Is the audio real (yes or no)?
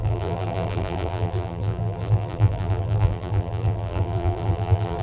no